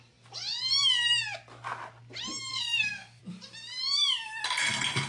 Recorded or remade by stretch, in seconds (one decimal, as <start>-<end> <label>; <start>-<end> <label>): 0.0-2.5 recorded; 2.5-3.2 remade; 3.2-5.1 recorded